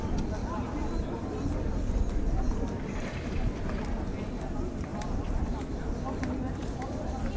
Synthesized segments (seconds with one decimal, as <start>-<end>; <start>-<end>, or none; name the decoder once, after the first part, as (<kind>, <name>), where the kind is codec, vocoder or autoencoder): none